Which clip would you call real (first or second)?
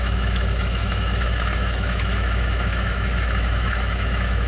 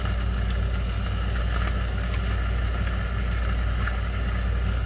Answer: second